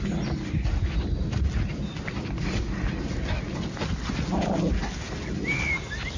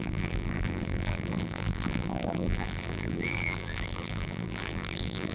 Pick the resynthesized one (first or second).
second